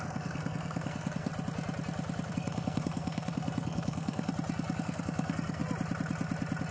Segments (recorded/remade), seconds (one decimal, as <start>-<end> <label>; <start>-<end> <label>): 0.0-1.3 remade; 1.3-2.3 recorded; 2.3-4.3 remade; 4.3-4.8 recorded; 4.8-5.6 remade; 5.6-6.7 recorded